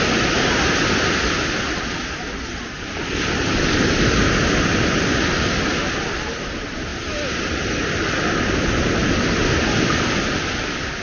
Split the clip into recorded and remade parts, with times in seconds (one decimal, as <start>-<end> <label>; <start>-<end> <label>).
0.0-11.0 recorded